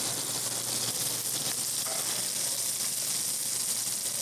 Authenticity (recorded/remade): recorded